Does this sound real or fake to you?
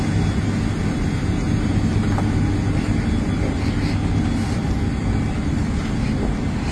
real